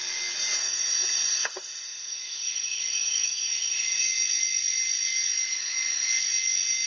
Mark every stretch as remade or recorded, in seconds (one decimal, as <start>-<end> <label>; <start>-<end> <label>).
0.0-0.6 recorded; 0.6-4.0 remade; 4.0-5.5 recorded; 5.5-6.1 remade; 6.1-6.9 recorded